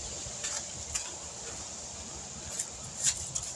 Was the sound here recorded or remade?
recorded